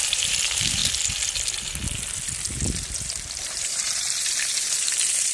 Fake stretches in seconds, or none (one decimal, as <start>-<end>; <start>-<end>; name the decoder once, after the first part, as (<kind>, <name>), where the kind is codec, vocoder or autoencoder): 0.0-0.8 (vocoder, BigVGAN v2); 3.4-5.3